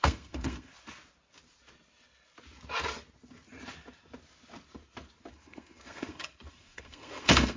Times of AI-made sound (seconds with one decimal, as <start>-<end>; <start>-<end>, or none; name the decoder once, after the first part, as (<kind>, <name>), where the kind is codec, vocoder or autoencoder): 0.0-0.7 (codec, SNAC); 5.3-7.6